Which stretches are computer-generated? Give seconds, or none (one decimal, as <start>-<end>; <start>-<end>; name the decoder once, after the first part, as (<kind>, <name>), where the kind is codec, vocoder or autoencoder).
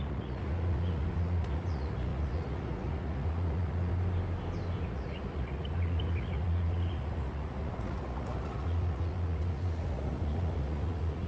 0.0-3.9 (vocoder, Vocos); 4.8-11.3